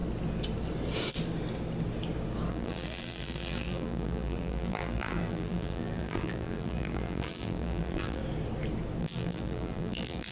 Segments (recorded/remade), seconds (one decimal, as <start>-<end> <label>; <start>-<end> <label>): 0.0-2.5 recorded; 2.5-8.2 remade; 8.2-9.0 recorded; 9.0-10.3 remade